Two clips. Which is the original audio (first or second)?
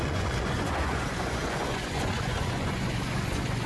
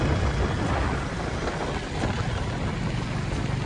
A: second